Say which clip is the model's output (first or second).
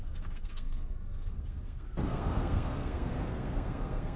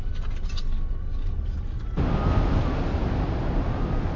first